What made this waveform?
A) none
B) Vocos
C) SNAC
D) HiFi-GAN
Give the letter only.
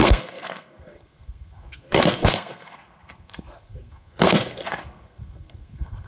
C